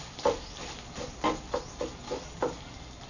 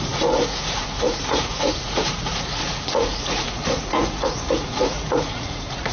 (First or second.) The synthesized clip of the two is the second